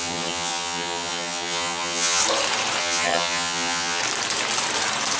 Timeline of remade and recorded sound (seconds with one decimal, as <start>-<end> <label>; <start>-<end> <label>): 0.0-2.2 remade; 2.2-2.8 recorded; 2.8-4.0 remade; 4.0-5.2 recorded